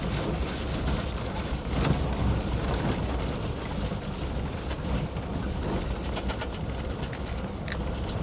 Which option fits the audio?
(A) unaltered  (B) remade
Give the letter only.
A